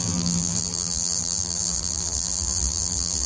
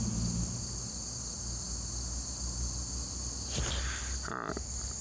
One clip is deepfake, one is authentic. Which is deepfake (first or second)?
first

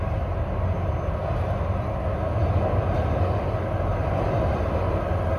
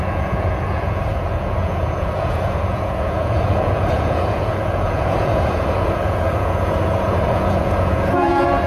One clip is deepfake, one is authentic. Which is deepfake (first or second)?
second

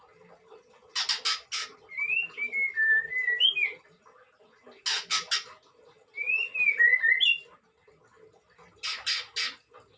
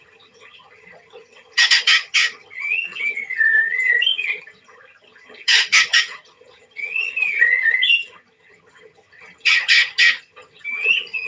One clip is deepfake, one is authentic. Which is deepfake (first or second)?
second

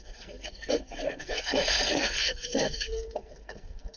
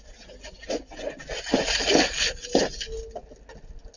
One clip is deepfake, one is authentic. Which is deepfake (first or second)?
first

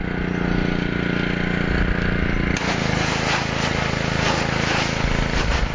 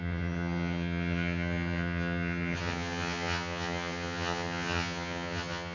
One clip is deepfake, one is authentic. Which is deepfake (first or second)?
second